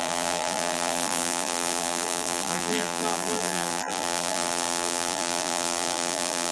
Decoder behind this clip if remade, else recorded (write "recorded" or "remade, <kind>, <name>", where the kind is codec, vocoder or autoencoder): remade, vocoder, BigVGAN v2